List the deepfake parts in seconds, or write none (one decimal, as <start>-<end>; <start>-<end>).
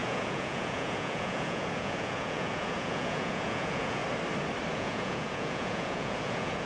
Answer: 0.0-4.0; 4.7-6.7